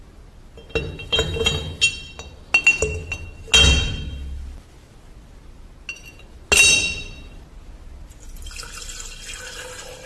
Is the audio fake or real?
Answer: real